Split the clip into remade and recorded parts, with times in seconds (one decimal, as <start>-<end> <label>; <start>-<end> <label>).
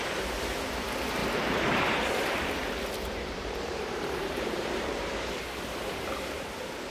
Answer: 0.0-1.2 recorded; 1.2-5.3 remade; 5.3-6.9 recorded